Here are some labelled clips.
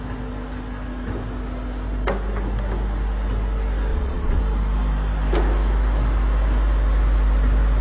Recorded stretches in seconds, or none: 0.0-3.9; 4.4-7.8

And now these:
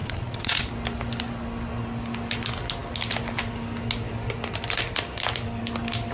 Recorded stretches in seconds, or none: 0.6-6.1

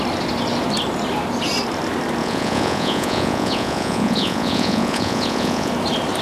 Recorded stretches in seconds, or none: 0.0-2.2; 5.7-6.2

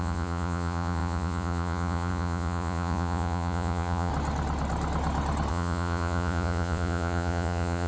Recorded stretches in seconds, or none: 4.1-5.5

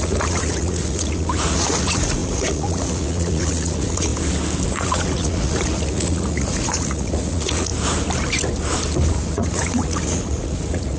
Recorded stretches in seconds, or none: 4.1-4.7; 7.7-9.1

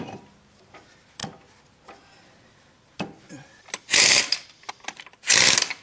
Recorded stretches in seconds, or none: 0.0-5.8